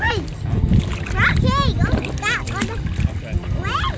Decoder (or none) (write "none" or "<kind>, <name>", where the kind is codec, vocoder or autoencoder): none